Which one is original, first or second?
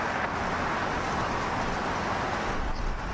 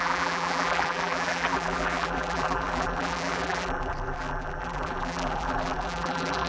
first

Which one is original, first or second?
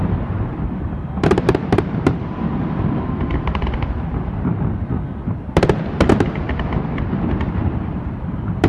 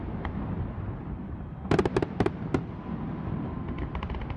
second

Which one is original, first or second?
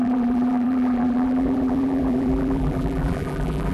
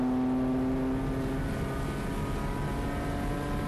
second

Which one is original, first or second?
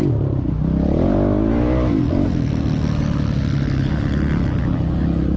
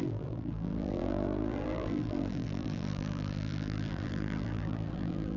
first